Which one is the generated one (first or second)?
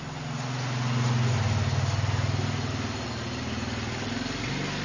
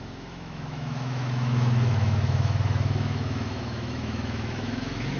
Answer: second